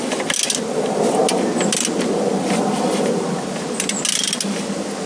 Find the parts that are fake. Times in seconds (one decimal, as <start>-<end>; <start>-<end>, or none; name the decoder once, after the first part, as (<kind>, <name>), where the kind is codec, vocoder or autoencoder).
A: none